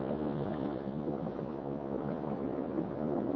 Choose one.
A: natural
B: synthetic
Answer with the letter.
B